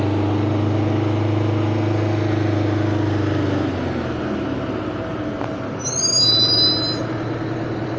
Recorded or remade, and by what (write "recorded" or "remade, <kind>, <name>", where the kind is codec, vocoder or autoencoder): recorded